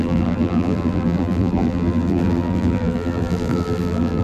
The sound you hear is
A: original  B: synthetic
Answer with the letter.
B